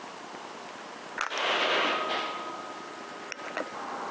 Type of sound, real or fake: real